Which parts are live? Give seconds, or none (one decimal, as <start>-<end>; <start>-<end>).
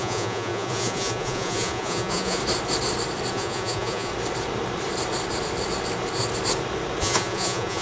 2.4-3.3; 4.1-7.0